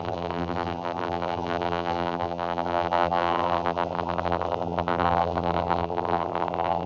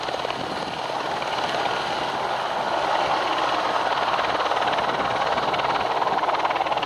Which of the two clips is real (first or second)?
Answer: second